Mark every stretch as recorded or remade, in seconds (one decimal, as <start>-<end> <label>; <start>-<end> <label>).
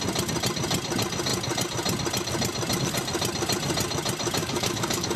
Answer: 0.0-4.4 recorded; 4.4-5.2 remade